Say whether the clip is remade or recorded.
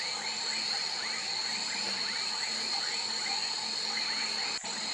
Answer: recorded